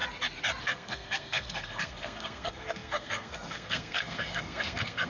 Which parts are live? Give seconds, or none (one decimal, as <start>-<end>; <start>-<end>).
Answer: 0.0-0.6